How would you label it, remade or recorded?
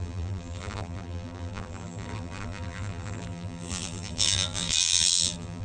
remade